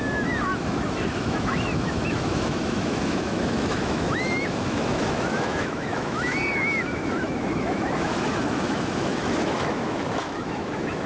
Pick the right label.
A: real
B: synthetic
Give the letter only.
B